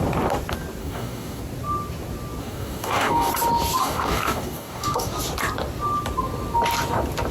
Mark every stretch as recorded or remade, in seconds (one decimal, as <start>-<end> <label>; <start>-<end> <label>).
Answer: 0.0-0.8 recorded; 0.8-1.4 remade; 1.4-2.4 recorded; 2.4-3.3 remade; 3.3-3.8 recorded; 3.8-5.1 remade; 5.1-7.3 recorded

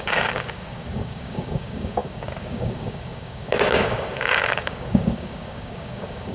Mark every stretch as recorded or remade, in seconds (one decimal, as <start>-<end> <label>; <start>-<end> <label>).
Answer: 0.0-6.3 remade